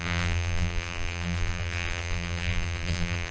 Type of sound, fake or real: fake